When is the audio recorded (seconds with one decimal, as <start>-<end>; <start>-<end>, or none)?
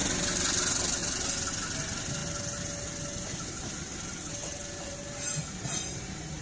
0.0-6.4